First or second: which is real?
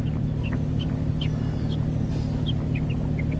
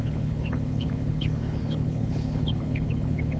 first